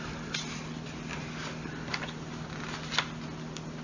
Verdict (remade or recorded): recorded